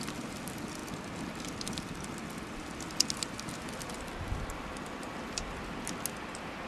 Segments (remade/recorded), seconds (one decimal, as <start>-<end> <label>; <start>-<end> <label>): 0.0-6.7 recorded